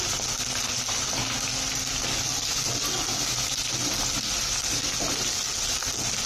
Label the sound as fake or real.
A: real